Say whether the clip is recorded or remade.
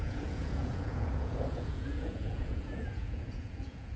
remade